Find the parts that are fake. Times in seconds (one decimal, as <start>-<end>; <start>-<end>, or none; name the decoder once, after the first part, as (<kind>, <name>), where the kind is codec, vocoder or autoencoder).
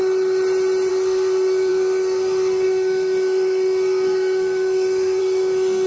0.9-5.9 (codec, SNAC)